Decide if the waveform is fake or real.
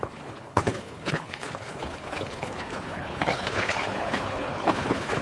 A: fake